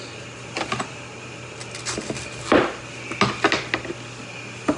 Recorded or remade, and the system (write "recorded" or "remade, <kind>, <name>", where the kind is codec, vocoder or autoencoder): recorded